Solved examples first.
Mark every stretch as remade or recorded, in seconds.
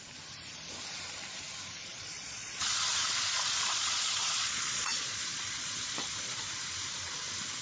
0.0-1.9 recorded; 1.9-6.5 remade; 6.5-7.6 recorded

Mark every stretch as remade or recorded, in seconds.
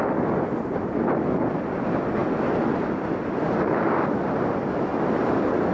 0.0-5.7 recorded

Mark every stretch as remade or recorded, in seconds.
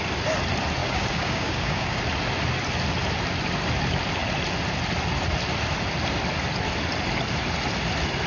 0.0-0.8 recorded; 0.8-2.0 remade; 2.0-8.3 recorded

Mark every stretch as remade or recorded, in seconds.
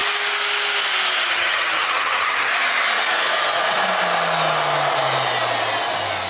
0.0-1.3 recorded; 1.3-2.5 remade; 2.5-6.3 recorded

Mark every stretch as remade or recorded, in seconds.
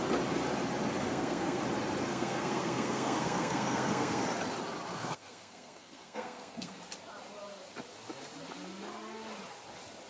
0.0-1.0 recorded; 1.0-1.6 remade; 1.6-2.1 recorded; 2.1-4.2 remade; 4.2-4.9 recorded; 4.9-6.8 remade; 6.8-10.1 recorded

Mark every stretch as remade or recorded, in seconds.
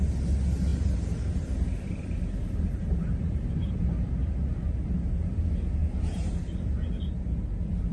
0.0-0.7 recorded; 0.7-3.7 remade; 3.7-5.8 recorded; 5.8-6.3 remade; 6.3-7.9 recorded